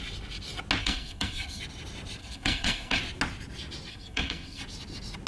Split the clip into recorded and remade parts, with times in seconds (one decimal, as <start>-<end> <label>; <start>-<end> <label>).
0.0-0.8 recorded; 0.8-1.6 remade; 1.6-2.2 recorded; 2.2-3.0 remade; 3.0-3.9 recorded; 3.9-4.6 remade; 4.6-5.3 recorded